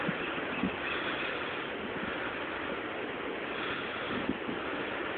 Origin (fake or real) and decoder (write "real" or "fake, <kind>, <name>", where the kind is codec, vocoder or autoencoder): real